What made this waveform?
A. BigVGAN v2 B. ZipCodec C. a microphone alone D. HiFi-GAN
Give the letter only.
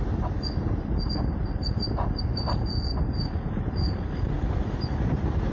C